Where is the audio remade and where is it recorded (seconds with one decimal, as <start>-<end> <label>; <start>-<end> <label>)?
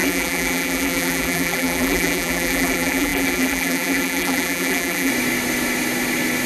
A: 0.0-5.1 remade; 5.1-6.5 recorded